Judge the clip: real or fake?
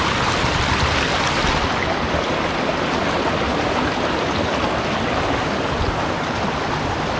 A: real